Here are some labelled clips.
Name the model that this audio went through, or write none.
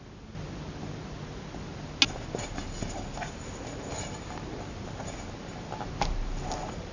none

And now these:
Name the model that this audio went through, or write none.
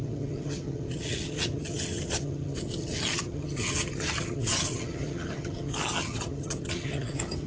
vocoder, HiFi-GAN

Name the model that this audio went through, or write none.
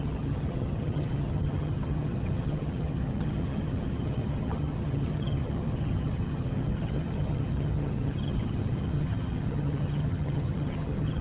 vocoder, HiFi-GAN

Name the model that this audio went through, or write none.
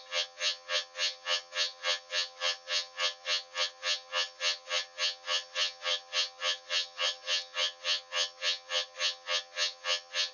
vocoder, HiFi-GAN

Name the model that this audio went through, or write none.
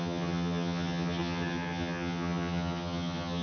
vocoder, HiFi-GAN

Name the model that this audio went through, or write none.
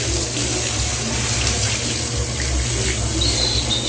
none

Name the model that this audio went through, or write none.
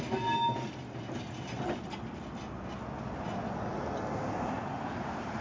none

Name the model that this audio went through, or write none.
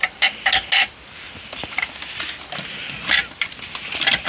none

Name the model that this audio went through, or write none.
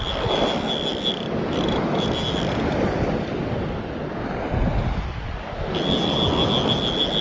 none